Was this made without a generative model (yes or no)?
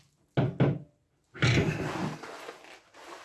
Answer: yes